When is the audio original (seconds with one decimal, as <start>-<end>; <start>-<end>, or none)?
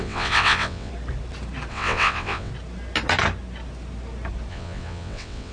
0.9-1.7; 2.5-4.5